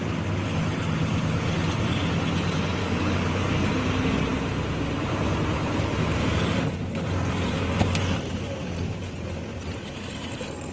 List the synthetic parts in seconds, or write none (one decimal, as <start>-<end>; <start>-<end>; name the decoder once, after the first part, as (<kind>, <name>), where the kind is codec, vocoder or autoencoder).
2.8-3.7 (codec, DAC)